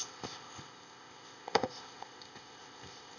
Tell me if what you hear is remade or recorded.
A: remade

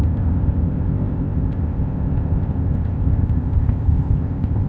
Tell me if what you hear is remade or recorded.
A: remade